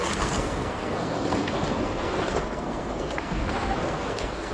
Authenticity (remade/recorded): remade